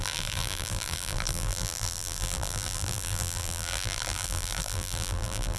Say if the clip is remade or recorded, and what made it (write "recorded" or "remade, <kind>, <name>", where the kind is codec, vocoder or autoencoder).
remade, vocoder, BigVGAN v2